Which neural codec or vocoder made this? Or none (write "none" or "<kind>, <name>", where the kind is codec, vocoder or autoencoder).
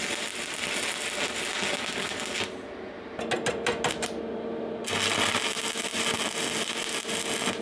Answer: none